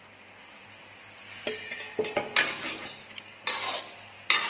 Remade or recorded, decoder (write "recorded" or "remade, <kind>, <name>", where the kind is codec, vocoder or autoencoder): recorded